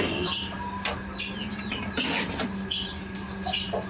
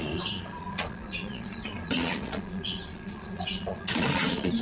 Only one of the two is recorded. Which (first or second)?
first